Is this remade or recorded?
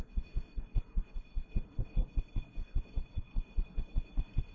remade